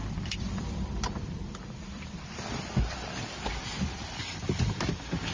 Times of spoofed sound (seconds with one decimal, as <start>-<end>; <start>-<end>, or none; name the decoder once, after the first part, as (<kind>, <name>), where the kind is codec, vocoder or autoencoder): 0.0-3.2 (vocoder, BigVGAN v2)